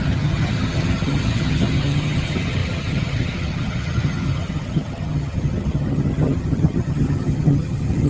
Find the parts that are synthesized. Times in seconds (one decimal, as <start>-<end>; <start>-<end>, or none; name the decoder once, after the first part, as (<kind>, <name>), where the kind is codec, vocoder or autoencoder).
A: 0.0-8.1 (vocoder, HiFi-GAN)